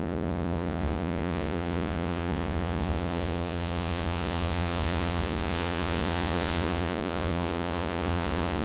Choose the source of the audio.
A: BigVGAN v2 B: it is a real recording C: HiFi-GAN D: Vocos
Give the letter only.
D